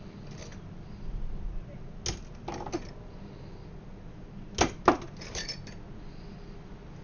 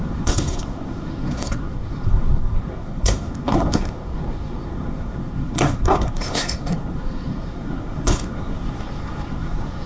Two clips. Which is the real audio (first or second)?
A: first